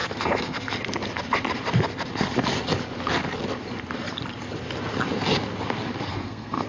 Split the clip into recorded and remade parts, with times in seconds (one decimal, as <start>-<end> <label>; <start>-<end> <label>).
0.0-0.7 remade; 0.7-6.1 recorded; 6.1-6.7 remade